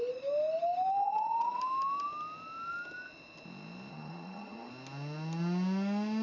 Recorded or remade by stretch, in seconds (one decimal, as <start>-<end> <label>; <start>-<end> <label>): 0.0-1.0 recorded; 1.0-1.6 remade; 1.6-3.9 recorded; 3.9-4.7 remade; 4.7-6.2 recorded